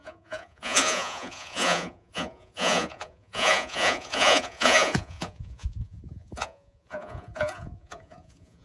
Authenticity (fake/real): fake